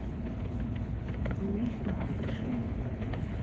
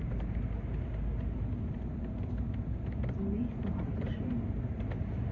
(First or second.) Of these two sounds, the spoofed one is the first